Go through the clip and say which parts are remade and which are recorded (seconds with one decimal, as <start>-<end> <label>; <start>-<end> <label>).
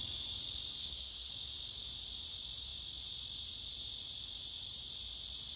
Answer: 0.0-0.8 recorded; 0.8-1.3 remade; 1.3-5.6 recorded